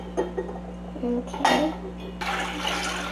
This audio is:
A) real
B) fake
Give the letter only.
A